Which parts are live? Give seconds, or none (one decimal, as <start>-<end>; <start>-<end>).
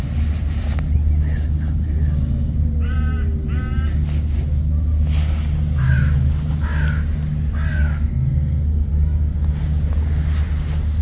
0.0-7.7; 8.9-11.0